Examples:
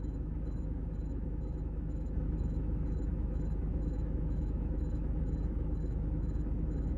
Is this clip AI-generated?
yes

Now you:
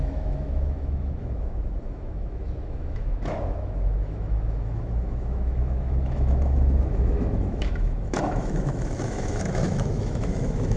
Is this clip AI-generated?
yes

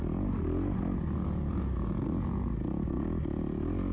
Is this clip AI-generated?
no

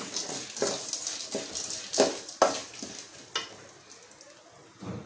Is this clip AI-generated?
no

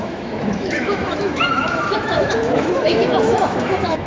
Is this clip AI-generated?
yes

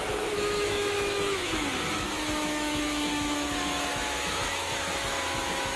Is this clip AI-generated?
yes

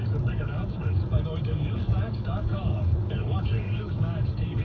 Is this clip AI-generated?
yes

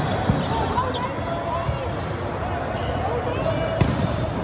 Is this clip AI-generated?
no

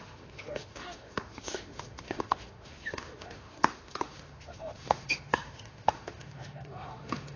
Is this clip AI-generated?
yes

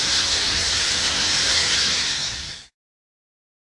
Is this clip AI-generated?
yes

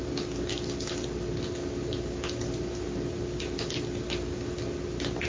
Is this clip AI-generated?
no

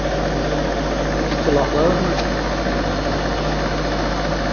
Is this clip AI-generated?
no